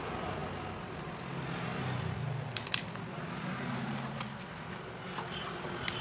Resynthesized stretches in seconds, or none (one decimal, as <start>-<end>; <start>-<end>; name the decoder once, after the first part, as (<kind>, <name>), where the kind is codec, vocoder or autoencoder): none